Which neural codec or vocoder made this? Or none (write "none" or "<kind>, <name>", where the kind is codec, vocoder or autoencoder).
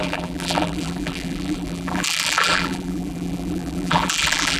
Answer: vocoder, BigVGAN v2